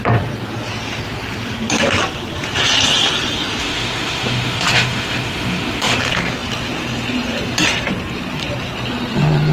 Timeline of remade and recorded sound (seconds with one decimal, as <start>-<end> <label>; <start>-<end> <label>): 0.0-3.6 recorded; 3.6-6.0 remade; 6.0-9.5 recorded